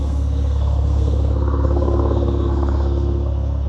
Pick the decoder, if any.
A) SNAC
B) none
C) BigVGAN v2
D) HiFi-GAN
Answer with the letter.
A